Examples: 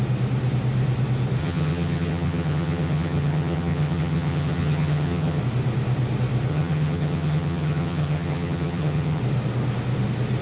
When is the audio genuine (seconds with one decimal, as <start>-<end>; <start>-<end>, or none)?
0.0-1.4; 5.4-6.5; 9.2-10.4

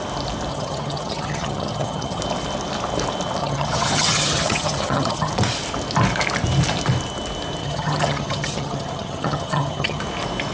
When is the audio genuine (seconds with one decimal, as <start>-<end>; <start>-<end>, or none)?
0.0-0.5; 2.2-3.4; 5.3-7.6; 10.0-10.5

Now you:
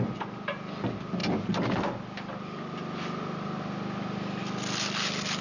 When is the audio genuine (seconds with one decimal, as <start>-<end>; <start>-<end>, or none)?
0.0-5.4